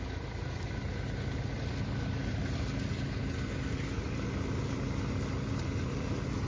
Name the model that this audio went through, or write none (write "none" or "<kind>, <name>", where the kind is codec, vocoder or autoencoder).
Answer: none